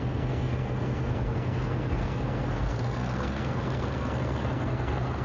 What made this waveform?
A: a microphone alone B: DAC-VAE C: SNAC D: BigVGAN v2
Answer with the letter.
C